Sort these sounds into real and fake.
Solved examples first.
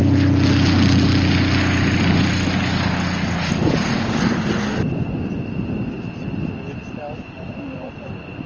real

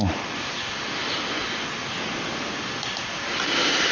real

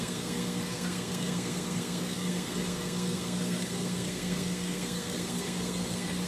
fake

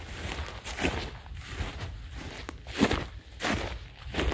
real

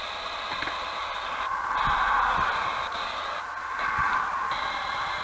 real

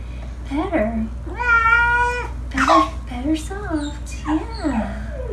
real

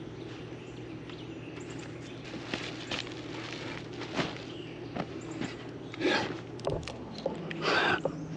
real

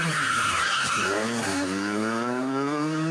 fake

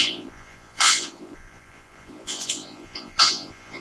fake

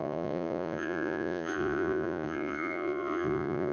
fake